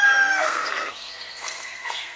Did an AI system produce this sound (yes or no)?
yes